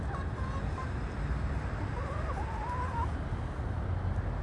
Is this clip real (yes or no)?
yes